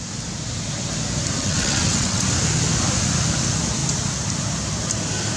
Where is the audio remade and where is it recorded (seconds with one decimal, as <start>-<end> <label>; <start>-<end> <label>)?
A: 0.0-1.4 recorded; 1.4-2.2 remade; 2.2-5.4 recorded